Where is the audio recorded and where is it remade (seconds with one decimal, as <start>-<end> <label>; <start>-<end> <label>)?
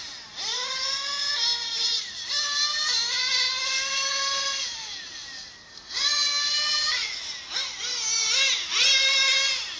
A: 0.0-9.8 recorded